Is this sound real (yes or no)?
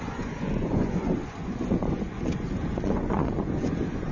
no